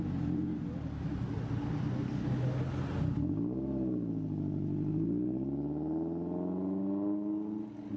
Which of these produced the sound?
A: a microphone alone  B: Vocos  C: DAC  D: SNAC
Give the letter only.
A